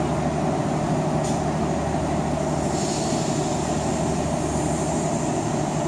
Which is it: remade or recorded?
recorded